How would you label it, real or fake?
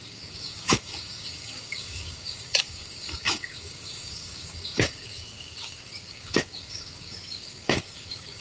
fake